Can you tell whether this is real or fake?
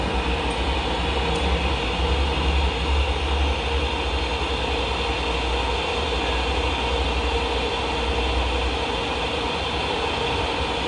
real